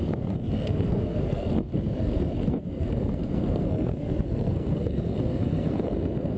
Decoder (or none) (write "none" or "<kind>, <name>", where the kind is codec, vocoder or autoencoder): codec, SNAC